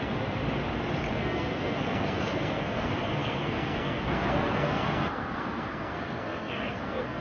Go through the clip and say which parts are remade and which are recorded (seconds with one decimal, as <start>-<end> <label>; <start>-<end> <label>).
0.0-0.4 remade; 0.4-1.1 recorded; 1.1-7.2 remade